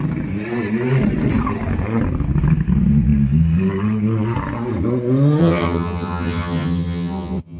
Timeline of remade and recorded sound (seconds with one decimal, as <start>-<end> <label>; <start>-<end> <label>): 0.0-5.4 recorded; 5.4-7.6 remade